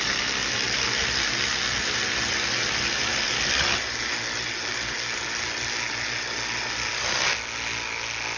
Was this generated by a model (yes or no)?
no